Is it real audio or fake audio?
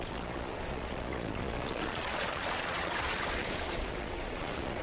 fake